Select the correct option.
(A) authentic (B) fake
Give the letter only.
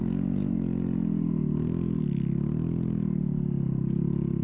A